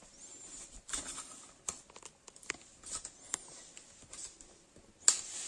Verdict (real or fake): real